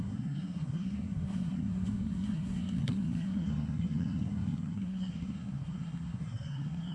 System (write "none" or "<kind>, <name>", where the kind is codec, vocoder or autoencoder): codec, SNAC